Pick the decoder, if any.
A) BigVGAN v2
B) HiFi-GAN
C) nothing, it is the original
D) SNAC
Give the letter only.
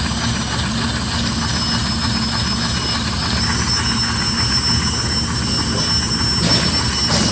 C